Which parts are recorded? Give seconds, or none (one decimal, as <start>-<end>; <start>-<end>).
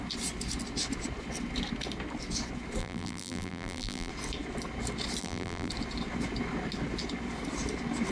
0.0-2.8; 4.1-5.2; 5.7-8.1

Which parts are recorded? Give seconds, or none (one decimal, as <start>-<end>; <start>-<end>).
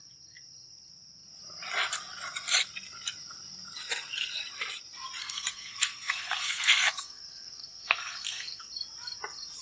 0.0-5.2; 8.7-9.6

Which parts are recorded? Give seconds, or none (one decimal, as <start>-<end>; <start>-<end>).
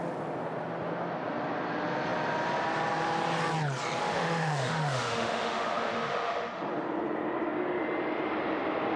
0.0-4.0; 6.6-9.0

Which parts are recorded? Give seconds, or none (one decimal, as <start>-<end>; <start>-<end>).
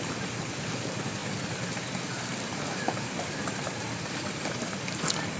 0.0-2.1; 5.0-5.4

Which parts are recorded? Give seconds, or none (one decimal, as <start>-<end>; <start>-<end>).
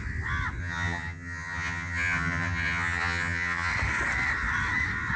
0.0-0.6; 3.7-5.2